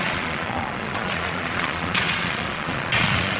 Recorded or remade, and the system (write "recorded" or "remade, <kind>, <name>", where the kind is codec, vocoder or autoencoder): remade, vocoder, Vocos